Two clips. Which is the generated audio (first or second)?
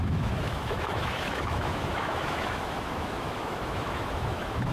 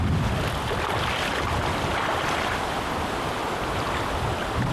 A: first